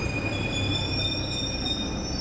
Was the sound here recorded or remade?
recorded